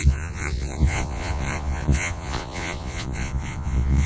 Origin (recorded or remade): remade